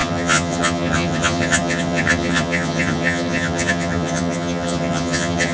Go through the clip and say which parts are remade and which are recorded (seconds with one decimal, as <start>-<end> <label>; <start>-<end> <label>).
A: 0.0-5.5 remade

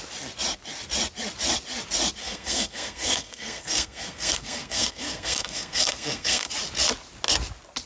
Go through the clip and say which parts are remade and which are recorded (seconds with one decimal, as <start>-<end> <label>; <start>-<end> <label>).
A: 0.0-2.2 recorded; 2.2-6.5 remade; 6.5-7.9 recorded

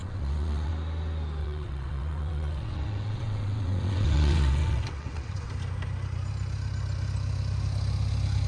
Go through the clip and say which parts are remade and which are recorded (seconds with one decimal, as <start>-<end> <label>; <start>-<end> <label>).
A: 0.0-0.7 remade; 0.7-1.4 recorded; 1.4-5.5 remade; 5.5-8.5 recorded

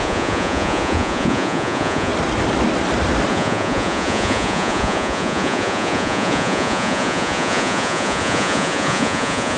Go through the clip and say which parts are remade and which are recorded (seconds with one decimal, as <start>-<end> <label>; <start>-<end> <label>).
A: 0.0-2.1 remade; 2.1-3.3 recorded; 3.3-9.6 remade

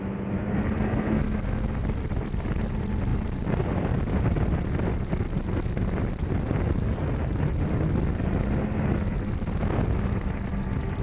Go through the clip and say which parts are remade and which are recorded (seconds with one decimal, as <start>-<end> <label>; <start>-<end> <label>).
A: 0.0-3.1 recorded; 3.1-5.2 remade; 5.2-6.9 recorded; 6.9-7.7 remade; 7.7-11.0 recorded

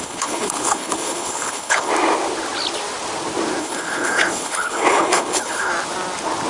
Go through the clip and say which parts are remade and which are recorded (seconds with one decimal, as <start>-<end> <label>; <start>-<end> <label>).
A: 0.0-1.9 remade; 1.9-3.6 recorded; 3.6-5.7 remade; 5.7-6.5 recorded